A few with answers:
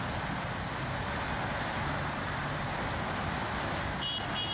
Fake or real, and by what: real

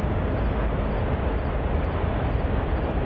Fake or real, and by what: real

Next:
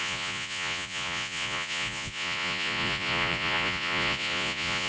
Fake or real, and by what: fake, vocoder, Vocos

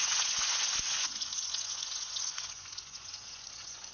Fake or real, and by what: fake, vocoder, Vocos